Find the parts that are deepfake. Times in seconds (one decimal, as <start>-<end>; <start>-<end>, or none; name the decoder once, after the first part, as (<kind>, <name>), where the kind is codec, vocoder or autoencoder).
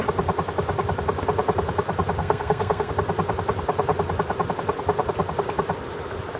2.2-2.9 (codec, SNAC)